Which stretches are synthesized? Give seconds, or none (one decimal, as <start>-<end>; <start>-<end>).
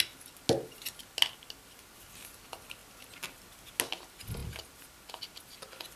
none